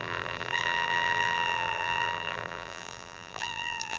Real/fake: fake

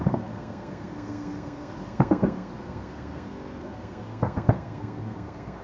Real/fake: fake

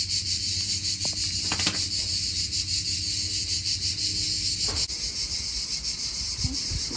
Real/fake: real